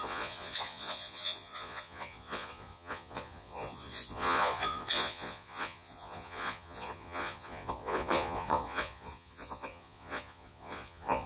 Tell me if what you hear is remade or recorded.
remade